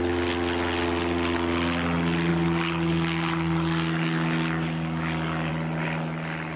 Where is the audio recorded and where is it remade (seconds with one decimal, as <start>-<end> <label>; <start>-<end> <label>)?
0.0-2.3 recorded; 2.3-5.5 remade; 5.5-6.6 recorded

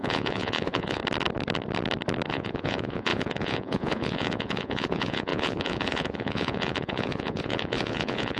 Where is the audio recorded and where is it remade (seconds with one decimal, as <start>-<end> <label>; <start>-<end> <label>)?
0.0-1.0 remade; 1.0-2.3 recorded; 2.3-8.4 remade

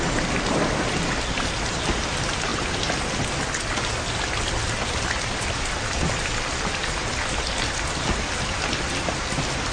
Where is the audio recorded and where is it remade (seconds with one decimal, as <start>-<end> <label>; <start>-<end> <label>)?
0.0-9.7 recorded

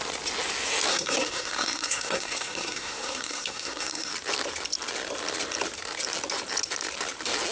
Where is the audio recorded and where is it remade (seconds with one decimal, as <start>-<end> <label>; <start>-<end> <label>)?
0.0-0.9 recorded; 0.9-4.1 remade; 4.1-7.5 recorded